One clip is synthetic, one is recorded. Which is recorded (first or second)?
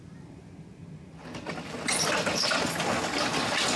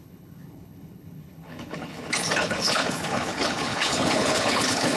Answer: first